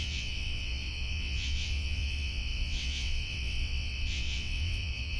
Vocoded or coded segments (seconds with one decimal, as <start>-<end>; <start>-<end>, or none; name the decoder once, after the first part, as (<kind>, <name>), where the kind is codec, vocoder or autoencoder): 0.0-5.2 (vocoder, WaveNeXt)